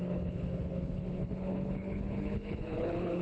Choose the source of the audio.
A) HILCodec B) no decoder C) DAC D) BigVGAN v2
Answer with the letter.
A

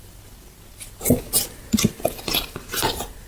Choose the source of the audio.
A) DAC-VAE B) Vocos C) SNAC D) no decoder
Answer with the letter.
D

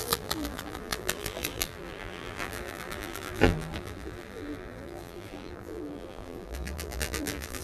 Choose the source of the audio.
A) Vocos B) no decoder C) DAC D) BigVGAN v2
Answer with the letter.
D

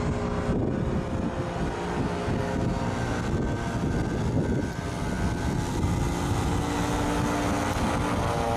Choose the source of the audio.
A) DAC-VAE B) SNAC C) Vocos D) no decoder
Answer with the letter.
D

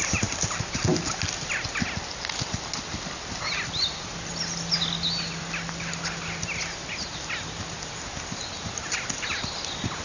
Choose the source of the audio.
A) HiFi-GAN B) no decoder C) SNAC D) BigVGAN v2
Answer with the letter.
B